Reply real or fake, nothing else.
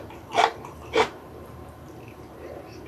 fake